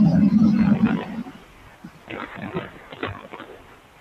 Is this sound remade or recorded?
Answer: recorded